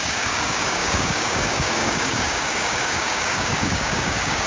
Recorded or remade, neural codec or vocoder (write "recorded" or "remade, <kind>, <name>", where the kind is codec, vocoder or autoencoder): remade, codec, DAC